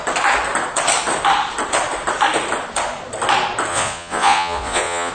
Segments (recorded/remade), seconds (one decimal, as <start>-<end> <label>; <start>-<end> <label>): 0.0-3.7 recorded; 3.7-5.1 remade